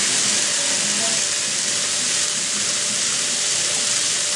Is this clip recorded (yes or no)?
yes